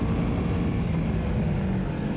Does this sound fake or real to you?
real